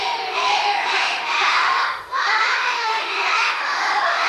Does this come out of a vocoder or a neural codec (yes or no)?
yes